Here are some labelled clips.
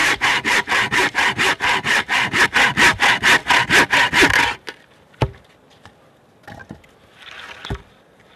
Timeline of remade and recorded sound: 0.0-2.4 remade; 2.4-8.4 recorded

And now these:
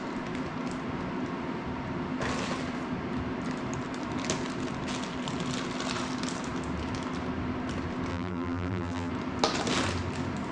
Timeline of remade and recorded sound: 0.0-8.1 recorded; 8.1-9.1 remade; 9.1-10.5 recorded

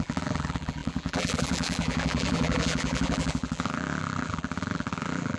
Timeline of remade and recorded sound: 0.0-5.4 remade

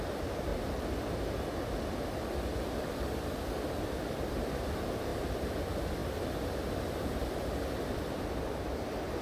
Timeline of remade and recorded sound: 0.0-0.5 remade; 0.5-3.6 recorded; 3.6-9.2 remade

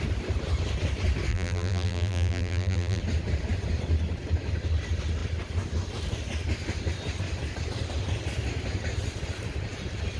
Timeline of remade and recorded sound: 0.0-1.3 recorded; 1.3-3.0 remade; 3.0-10.2 recorded

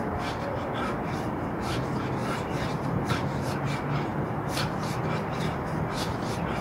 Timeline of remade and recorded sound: 0.0-2.2 recorded; 2.2-3.1 remade; 3.1-4.1 recorded; 4.1-5.0 remade; 5.0-6.6 recorded

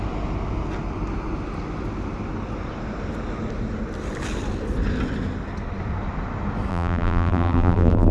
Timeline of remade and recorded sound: 0.0-6.7 recorded; 6.7-8.1 remade